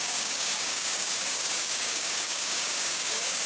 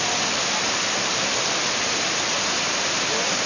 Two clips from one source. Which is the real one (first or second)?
second